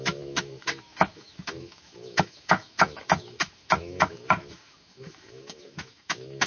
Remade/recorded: remade